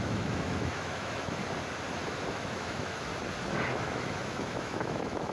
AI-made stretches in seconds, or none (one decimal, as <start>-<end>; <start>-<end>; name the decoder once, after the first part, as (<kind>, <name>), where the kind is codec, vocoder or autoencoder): 0.0-1.4 (autoencoder, DAC-VAE); 2.3-3.1; 3.7-5.3